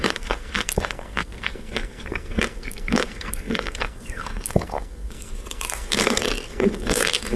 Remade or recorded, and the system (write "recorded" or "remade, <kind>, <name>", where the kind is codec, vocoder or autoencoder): remade, codec, SNAC